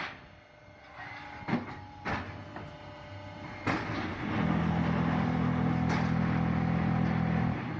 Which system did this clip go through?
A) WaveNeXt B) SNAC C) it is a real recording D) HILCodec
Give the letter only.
C